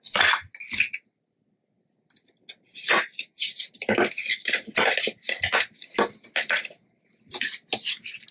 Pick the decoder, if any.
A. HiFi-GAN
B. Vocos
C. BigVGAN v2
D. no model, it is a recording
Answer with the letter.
D